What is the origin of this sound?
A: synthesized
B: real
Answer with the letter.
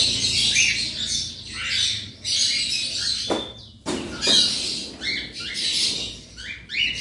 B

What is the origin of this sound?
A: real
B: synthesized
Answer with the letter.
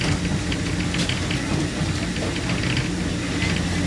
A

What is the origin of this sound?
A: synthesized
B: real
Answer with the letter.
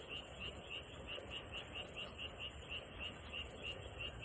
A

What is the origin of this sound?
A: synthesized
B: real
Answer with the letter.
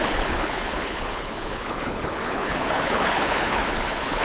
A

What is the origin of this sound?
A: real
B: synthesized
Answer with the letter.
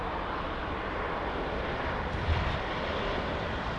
A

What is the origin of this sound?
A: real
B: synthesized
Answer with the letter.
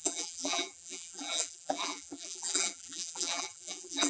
B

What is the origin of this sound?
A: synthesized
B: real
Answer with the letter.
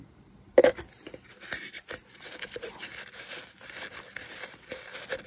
B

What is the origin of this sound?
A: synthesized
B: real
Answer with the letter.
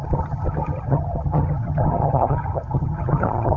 A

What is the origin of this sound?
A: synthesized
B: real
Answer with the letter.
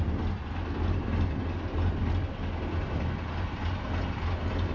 B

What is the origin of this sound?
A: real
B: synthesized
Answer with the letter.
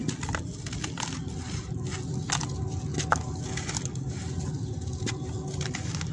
A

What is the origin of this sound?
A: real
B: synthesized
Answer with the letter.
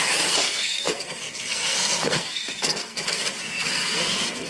B